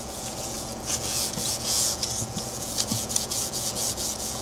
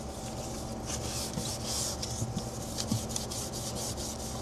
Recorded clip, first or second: second